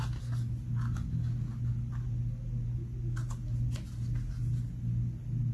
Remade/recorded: recorded